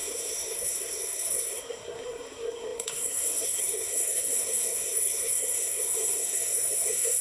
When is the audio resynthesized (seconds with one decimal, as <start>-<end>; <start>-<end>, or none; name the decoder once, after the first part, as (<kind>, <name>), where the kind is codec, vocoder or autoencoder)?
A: 0.0-7.2 (codec, SNAC)